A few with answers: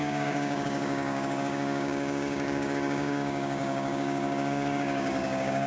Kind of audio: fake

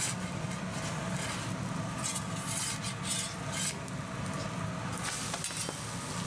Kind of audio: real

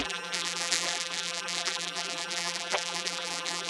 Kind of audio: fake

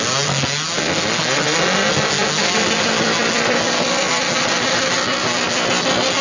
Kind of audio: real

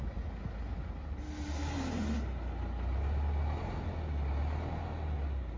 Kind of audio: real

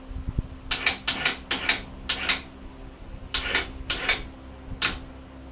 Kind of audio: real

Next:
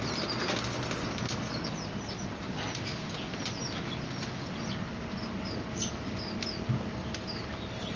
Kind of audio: real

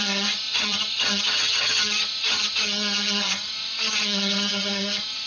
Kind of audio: fake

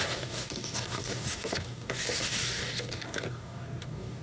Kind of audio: fake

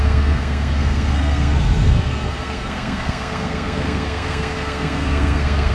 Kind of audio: fake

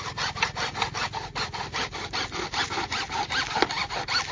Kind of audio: real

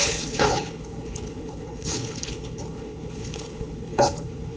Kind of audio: fake